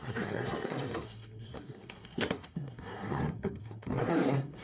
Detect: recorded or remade remade